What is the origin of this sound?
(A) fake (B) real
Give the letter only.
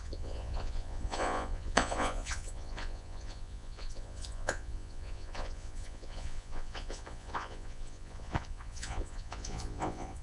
A